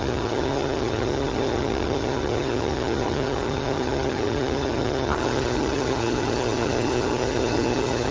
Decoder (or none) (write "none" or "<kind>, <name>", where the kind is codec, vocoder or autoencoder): vocoder, HiFi-GAN